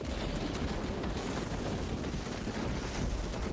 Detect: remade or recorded recorded